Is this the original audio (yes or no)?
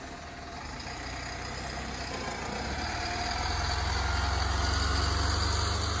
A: yes